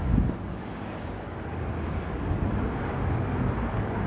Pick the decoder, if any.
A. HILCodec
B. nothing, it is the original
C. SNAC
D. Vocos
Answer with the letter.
B